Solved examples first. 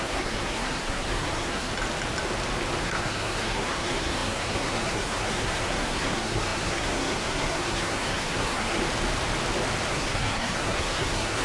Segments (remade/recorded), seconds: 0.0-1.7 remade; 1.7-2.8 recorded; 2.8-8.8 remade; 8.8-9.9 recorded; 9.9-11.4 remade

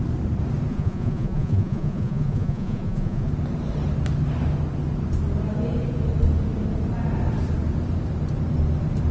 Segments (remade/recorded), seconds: 0.0-0.7 recorded; 0.7-3.3 remade; 3.3-9.1 recorded

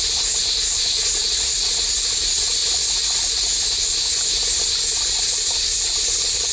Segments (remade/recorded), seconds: 0.0-1.2 recorded; 1.2-1.7 remade; 1.7-2.6 recorded; 2.6-3.6 remade; 3.6-6.5 recorded

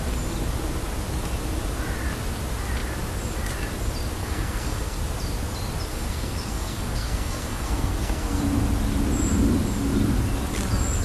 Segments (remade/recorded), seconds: 0.0-4.2 recorded; 4.2-5.0 remade; 5.0-5.9 recorded; 5.9-8.4 remade; 8.4-11.0 recorded

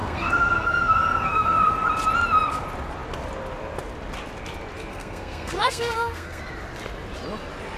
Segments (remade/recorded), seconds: 0.0-1.7 remade; 1.7-4.9 recorded; 4.9-6.4 remade; 6.4-7.8 recorded